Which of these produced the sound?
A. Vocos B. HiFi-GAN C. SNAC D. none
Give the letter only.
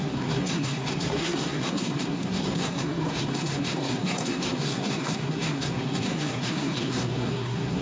C